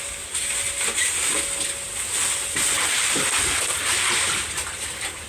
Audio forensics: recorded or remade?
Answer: recorded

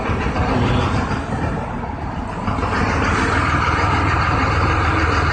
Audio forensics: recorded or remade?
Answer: recorded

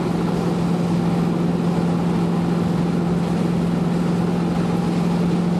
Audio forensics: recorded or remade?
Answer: recorded